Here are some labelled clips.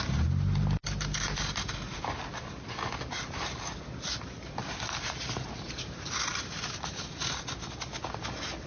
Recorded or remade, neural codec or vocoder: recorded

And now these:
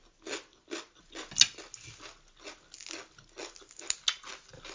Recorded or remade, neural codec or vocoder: recorded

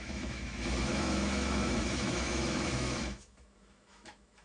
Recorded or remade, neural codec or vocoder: remade, autoencoder, DAC-VAE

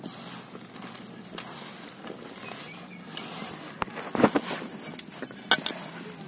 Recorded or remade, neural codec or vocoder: recorded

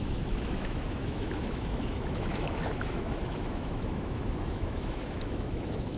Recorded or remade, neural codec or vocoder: remade, autoencoder, DAC-VAE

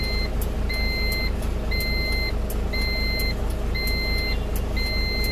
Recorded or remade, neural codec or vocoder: recorded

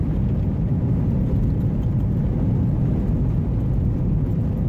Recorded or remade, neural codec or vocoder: recorded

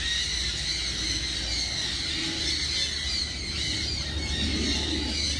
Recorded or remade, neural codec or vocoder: recorded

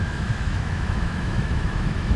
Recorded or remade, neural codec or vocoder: remade, autoencoder, DAC-VAE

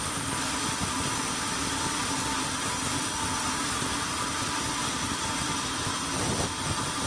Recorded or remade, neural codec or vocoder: recorded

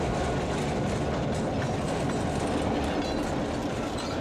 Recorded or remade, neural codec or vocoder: recorded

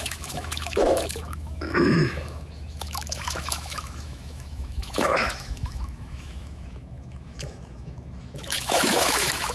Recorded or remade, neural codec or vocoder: remade, autoencoder, DAC-VAE